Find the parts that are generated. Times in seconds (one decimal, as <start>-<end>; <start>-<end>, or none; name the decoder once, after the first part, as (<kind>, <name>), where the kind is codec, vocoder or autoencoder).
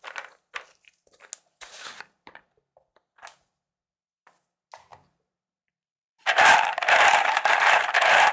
4.9-8.3 (vocoder, BigVGAN v2)